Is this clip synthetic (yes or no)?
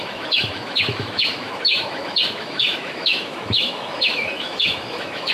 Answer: yes